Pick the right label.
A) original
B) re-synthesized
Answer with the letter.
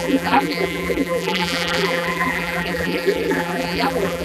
B